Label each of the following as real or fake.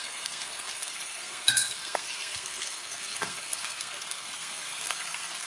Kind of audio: fake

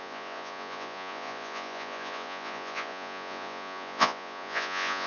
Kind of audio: fake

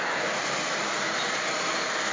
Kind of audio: fake